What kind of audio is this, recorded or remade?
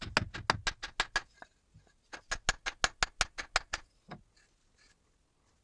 recorded